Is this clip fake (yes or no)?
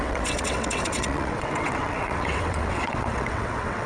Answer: yes